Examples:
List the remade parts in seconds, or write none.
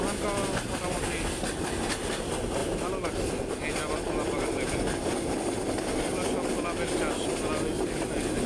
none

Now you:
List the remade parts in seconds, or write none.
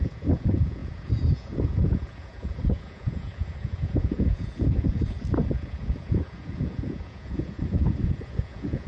0.0-8.9 (vocoder, Vocos)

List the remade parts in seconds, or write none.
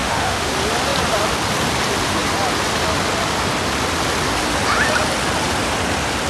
0.0-0.5 (autoencoder, DAC-VAE)